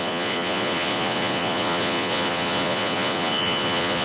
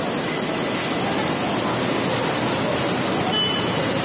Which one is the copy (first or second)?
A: first